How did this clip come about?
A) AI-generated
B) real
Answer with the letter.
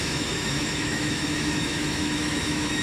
A